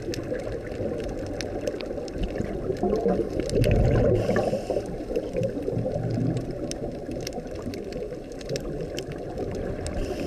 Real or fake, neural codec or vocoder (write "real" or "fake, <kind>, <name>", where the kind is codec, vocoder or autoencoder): real